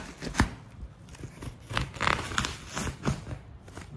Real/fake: real